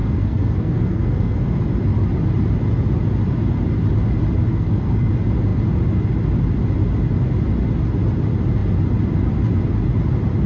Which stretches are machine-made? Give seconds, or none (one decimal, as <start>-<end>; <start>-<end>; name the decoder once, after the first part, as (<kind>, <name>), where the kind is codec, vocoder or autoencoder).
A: 0.0-1.5 (codec, SNAC); 4.5-5.1